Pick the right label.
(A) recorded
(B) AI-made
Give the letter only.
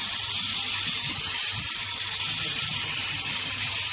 A